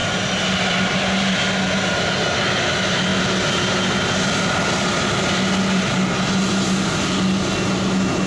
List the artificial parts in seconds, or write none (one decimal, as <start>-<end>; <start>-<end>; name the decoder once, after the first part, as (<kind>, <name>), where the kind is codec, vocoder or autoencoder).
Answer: none